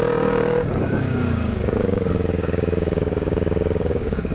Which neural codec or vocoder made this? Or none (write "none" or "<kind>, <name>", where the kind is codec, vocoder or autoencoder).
codec, DAC